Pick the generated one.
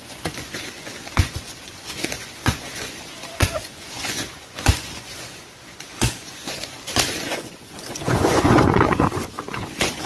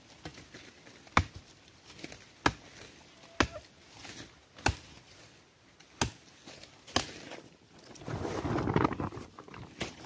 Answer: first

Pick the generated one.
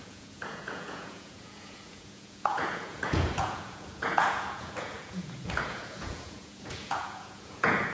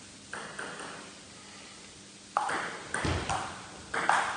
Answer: first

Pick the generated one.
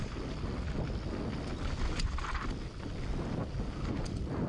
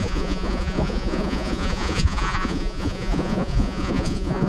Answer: second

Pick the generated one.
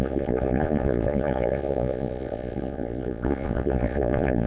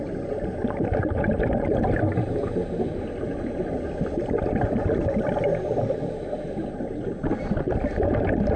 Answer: first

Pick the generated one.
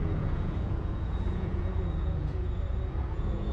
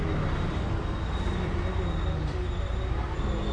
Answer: first